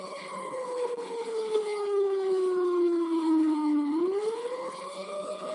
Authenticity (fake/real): fake